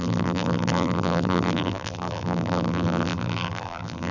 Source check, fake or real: fake